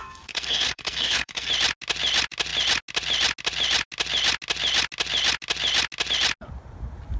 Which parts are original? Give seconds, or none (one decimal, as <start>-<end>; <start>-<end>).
1.5-7.2